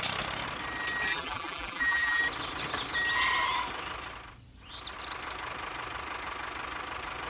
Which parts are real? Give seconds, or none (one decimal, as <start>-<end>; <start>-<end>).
0.0-1.1; 2.2-7.3